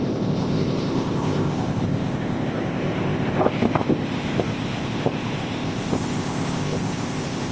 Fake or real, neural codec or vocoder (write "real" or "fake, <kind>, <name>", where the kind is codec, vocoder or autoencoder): fake, codec, ZipCodec